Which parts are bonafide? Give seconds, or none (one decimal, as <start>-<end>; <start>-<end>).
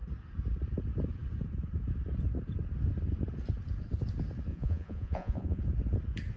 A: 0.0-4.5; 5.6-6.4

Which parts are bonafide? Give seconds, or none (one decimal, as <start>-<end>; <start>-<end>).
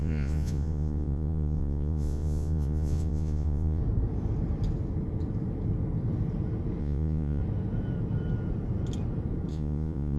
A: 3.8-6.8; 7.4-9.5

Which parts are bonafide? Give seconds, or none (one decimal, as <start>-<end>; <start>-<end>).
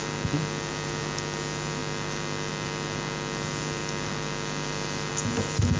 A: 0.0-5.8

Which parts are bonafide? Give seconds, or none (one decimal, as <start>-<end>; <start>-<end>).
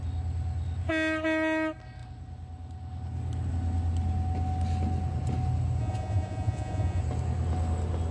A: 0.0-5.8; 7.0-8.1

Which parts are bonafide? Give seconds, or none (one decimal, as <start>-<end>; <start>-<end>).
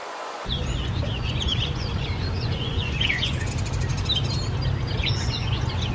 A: 3.5-5.0